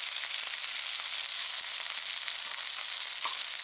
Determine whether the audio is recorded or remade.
recorded